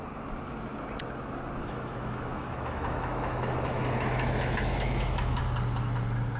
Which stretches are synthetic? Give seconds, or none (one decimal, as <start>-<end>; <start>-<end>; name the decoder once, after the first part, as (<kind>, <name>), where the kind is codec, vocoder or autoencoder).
1.6-5.4 (autoencoder, DAC-VAE)